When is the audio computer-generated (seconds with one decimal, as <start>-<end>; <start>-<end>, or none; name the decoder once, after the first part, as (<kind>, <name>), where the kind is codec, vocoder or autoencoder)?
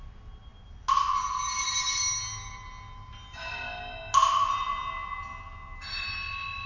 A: none